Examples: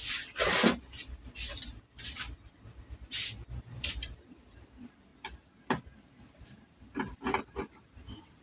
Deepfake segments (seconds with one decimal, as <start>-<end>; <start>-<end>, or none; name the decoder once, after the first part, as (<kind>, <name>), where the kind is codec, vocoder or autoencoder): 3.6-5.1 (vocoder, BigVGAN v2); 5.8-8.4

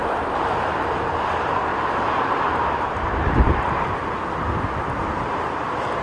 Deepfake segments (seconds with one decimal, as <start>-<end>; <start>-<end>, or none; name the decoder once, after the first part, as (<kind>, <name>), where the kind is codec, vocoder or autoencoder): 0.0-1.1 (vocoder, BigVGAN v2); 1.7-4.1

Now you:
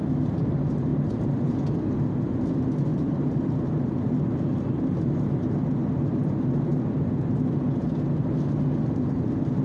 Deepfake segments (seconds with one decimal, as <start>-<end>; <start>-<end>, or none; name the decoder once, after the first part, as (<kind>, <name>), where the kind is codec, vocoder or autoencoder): 0.9-1.5 (vocoder, BigVGAN v2); 2.9-4.0